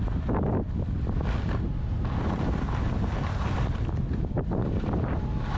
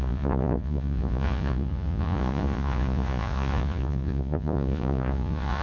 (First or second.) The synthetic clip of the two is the second